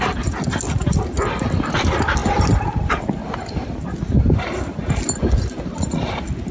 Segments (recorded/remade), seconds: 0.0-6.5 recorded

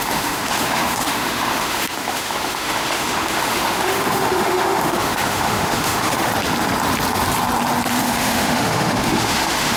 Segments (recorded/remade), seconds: 0.0-6.3 remade; 6.3-8.0 recorded; 8.0-9.8 remade

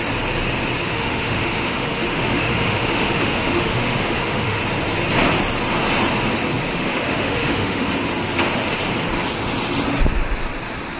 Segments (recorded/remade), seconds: 0.0-0.9 recorded; 0.9-4.6 remade; 4.6-6.7 recorded; 6.7-7.9 remade; 7.9-11.0 recorded

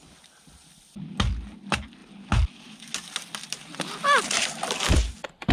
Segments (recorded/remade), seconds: 0.0-5.5 recorded